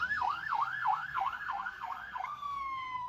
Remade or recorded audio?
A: remade